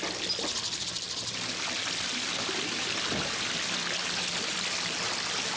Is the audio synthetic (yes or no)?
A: no